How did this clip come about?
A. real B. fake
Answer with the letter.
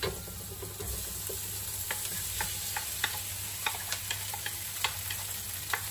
A